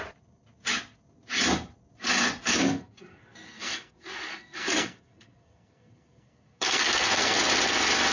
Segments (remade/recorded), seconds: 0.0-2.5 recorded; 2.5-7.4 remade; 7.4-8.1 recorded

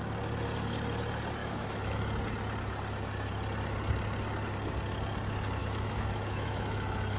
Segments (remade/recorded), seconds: 0.0-1.4 recorded; 1.4-2.0 remade; 2.0-5.6 recorded; 5.6-7.2 remade

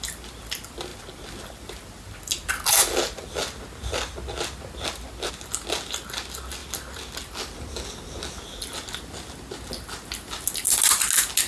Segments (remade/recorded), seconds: 0.0-11.5 recorded

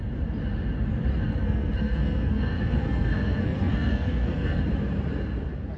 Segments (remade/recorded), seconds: 0.0-1.1 recorded; 1.1-4.6 remade; 4.6-5.8 recorded

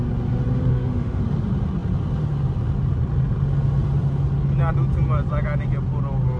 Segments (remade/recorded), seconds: 0.0-0.7 recorded; 0.7-1.2 remade; 1.2-6.4 recorded

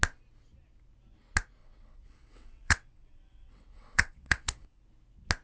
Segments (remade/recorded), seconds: 0.0-1.6 recorded; 1.6-4.8 remade; 4.8-5.4 recorded

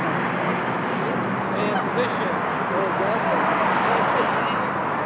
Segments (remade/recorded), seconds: 0.0-5.1 recorded